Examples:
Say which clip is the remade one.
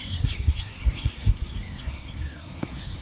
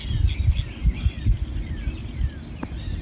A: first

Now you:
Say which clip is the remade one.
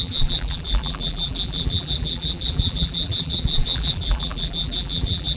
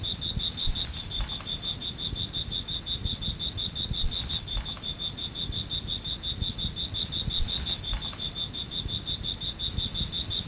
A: first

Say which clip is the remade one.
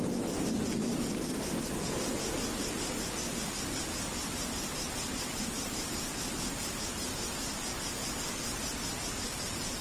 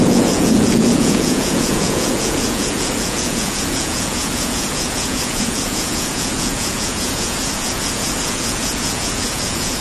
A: second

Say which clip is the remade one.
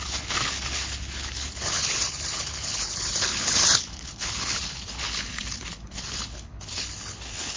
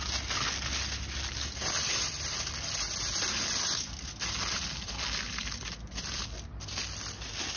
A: first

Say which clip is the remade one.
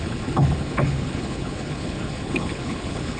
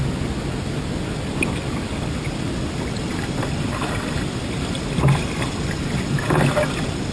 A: first